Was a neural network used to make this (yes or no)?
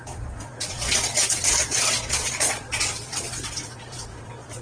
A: yes